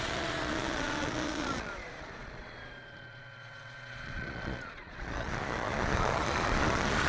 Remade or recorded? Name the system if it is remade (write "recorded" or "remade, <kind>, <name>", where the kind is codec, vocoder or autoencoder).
remade, vocoder, Vocos